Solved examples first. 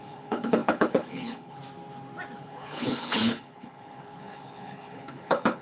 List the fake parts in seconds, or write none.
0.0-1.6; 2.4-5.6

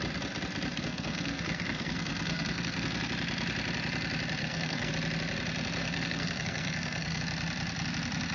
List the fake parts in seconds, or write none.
0.7-3.1; 4.4-4.9; 5.8-7.2